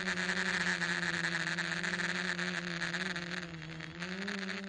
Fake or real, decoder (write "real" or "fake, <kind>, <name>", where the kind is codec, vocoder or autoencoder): real